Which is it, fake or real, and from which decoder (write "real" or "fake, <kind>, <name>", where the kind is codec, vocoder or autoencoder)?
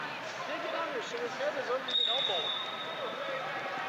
real